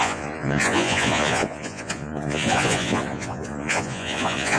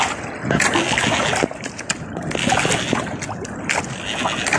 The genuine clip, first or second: second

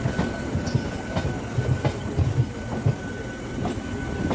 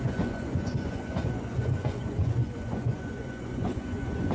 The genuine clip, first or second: first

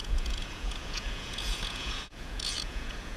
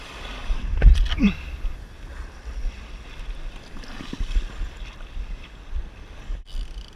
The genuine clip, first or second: second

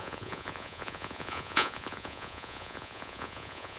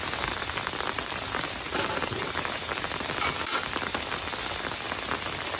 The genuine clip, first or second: second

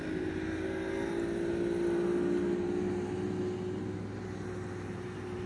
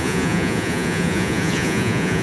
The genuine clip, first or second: first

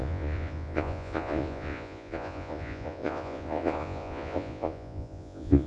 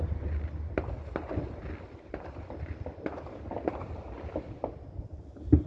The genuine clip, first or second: second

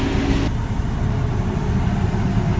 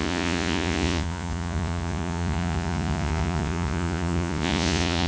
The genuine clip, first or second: first